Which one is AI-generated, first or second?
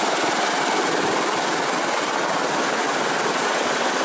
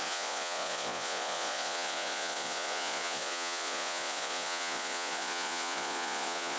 second